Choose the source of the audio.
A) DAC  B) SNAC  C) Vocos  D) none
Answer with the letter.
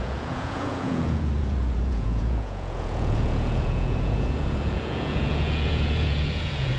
C